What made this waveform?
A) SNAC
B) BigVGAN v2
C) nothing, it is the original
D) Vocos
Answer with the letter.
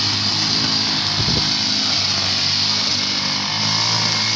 C